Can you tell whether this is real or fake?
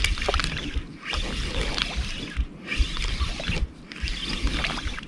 fake